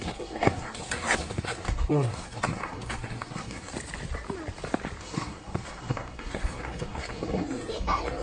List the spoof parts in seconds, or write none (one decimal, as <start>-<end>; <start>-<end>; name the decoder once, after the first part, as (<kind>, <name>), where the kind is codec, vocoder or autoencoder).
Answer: 0.0-3.7 (codec, SNAC); 5.0-8.2